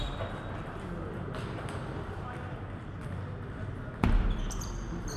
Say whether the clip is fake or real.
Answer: real